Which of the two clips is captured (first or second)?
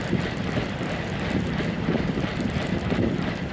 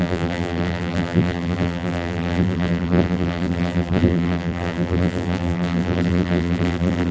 first